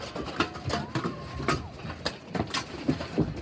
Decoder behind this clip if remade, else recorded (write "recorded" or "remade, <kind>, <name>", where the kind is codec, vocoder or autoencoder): recorded